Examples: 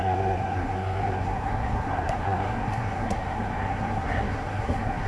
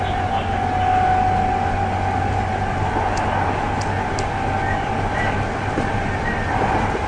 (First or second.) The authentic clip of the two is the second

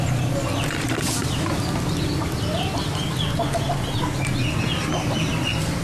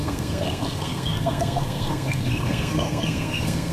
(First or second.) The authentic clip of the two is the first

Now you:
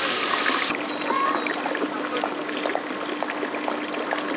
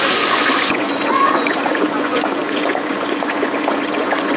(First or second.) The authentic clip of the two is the first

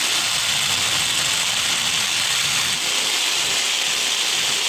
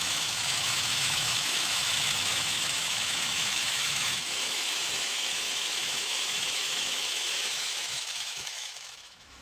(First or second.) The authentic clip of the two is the first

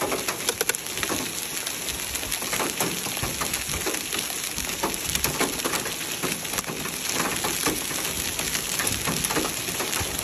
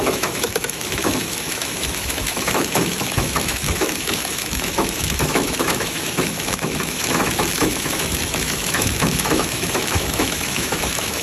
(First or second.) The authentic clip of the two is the first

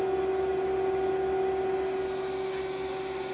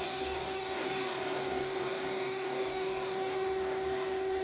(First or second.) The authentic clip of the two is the first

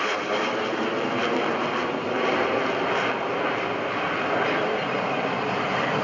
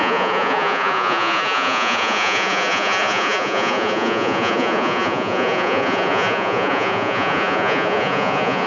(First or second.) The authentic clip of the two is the first